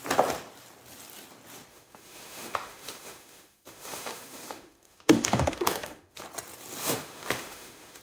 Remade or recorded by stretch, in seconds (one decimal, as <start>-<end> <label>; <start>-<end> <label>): 0.0-1.7 recorded; 1.7-6.2 remade; 6.2-6.8 recorded; 6.8-8.0 remade